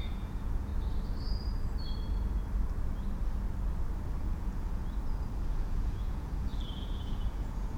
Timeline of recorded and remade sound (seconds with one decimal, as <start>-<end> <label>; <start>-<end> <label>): 0.0-0.7 remade; 0.7-4.2 recorded; 4.2-4.8 remade; 4.8-5.5 recorded; 5.5-7.8 remade